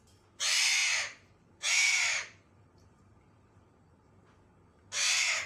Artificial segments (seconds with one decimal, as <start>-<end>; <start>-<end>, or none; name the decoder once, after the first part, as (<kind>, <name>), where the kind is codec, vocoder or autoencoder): 0.8-4.1 (vocoder, BigVGAN v2)